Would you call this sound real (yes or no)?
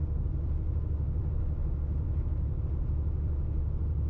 yes